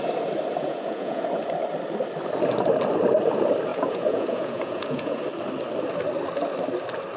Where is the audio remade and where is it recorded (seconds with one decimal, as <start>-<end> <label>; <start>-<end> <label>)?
0.0-0.6 recorded; 0.6-1.4 remade; 1.4-3.7 recorded; 3.7-5.2 remade; 5.2-7.2 recorded